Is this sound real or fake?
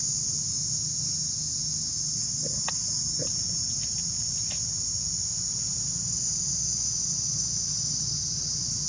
real